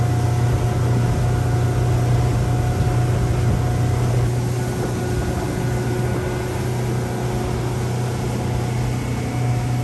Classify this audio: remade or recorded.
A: recorded